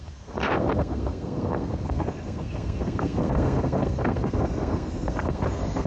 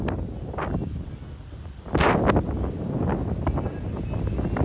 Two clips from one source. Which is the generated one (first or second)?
first